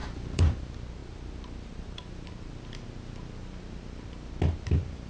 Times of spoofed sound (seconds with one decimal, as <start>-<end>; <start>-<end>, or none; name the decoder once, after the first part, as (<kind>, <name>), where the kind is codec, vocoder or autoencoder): 0.0-0.6 (vocoder, BigVGAN v2); 1.0-2.5